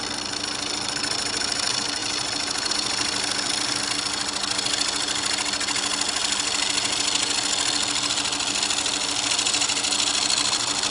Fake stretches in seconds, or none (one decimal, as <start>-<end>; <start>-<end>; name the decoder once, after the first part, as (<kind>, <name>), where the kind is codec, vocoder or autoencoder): none